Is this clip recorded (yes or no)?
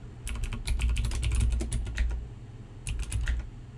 yes